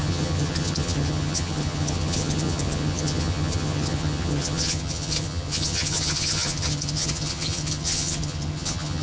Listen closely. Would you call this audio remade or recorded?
remade